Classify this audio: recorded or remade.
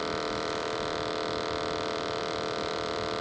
remade